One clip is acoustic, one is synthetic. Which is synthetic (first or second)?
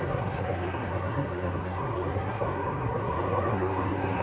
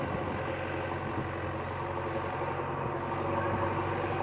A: first